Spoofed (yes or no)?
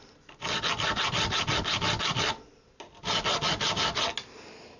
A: no